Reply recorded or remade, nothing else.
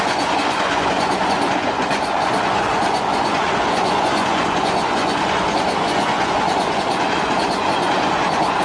remade